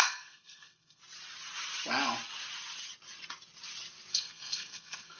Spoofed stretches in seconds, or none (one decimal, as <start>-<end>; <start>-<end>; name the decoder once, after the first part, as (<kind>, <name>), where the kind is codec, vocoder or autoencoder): 0.0-1.0 (codec, SNAC); 4.1-5.2

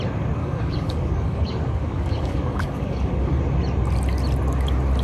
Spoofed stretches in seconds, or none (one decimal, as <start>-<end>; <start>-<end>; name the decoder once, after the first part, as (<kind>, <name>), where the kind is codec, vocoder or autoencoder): 0.4-3.4 (codec, DAC)

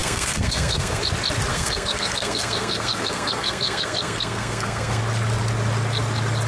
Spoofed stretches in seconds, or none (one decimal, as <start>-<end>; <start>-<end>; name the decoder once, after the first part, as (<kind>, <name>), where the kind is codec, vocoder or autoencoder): 0.0-1.0 (codec, SNAC); 1.5-5.0

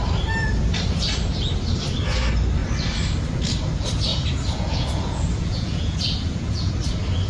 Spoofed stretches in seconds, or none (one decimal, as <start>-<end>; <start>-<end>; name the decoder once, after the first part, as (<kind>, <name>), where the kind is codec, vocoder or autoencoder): 4.1-6.7 (vocoder, Vocos)